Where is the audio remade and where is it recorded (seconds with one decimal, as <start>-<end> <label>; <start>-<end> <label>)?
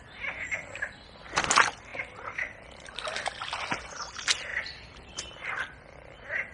0.0-4.5 recorded; 4.5-5.5 remade; 5.5-6.5 recorded